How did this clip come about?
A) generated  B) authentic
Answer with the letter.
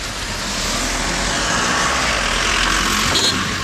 B